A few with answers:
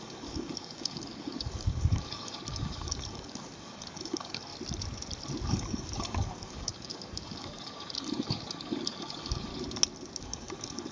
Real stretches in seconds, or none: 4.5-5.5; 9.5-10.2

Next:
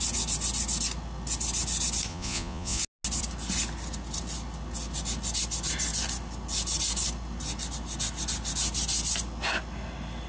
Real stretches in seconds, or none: 0.0-2.1; 2.8-10.3

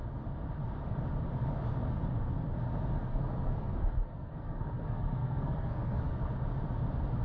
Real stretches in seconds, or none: 0.0-3.1; 6.3-7.2

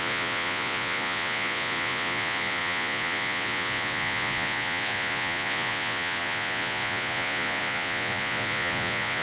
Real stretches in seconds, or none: none

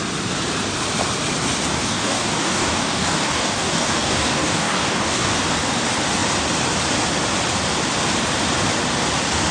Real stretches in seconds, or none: 0.0-1.7; 5.4-9.5